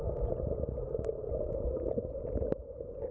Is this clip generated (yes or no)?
no